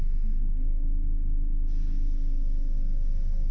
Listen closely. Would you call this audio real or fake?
real